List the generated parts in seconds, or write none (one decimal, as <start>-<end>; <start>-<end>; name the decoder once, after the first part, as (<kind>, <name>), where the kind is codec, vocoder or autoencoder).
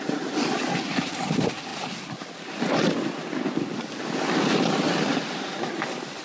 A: none